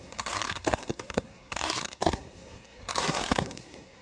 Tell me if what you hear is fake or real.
fake